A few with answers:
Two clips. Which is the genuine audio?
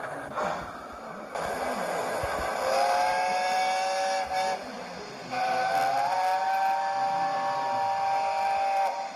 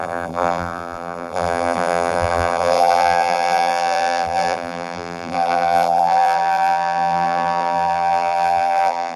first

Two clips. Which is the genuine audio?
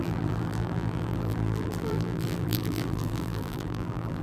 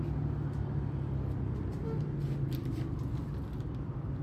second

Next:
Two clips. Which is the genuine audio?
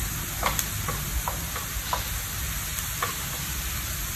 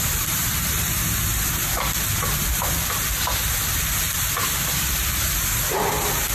first